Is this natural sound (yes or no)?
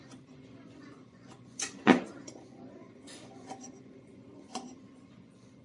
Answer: no